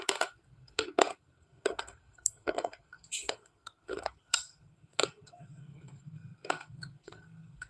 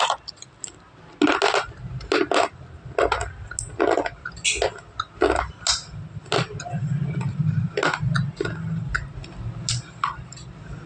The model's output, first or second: first